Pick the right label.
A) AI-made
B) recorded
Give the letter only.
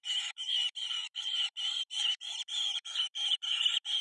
A